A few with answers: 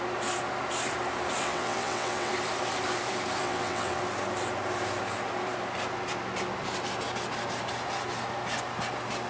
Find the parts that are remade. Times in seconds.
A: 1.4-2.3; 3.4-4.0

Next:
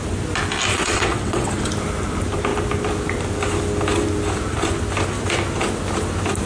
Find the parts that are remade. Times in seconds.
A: 0.7-1.7

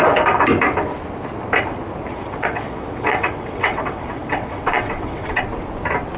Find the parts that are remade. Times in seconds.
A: 2.1-5.4

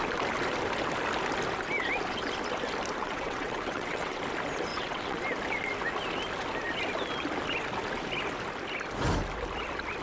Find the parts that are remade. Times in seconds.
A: 3.0-4.2; 4.7-5.2

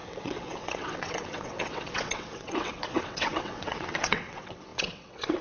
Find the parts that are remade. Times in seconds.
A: 0.0-5.4

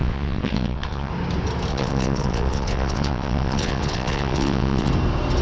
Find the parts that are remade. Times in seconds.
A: 0.0-1.1; 1.7-4.9

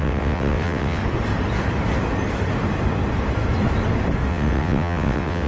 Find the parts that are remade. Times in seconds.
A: 0.0-1.0; 4.3-5.5

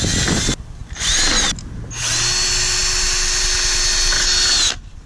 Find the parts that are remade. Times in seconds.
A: none